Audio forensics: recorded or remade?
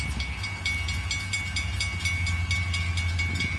recorded